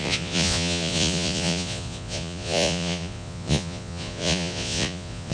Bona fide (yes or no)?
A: no